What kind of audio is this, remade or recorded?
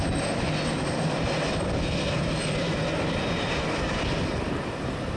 recorded